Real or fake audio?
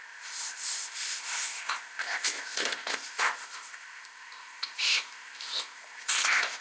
fake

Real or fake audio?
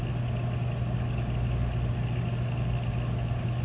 real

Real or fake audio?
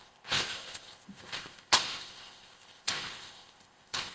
fake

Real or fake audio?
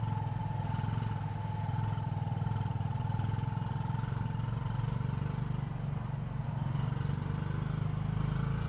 real